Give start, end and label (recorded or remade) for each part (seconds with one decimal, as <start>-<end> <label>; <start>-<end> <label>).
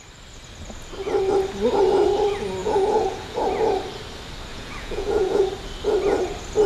0.0-2.6 recorded; 2.6-3.4 remade; 3.4-4.5 recorded; 4.5-5.4 remade; 5.4-6.7 recorded